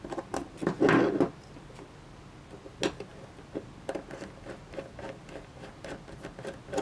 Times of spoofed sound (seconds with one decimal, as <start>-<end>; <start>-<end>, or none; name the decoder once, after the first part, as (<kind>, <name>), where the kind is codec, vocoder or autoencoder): none